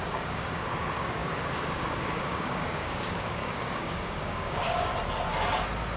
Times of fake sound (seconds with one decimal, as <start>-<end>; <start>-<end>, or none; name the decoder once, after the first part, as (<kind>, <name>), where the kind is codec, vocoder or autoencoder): 0.0-4.9 (codec, DAC)